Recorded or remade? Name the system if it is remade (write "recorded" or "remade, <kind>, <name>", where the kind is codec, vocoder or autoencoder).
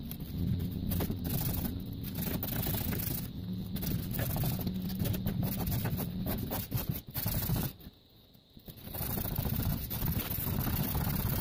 recorded